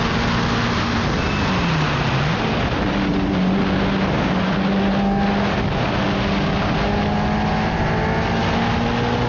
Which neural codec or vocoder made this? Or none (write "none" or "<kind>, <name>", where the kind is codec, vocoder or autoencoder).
none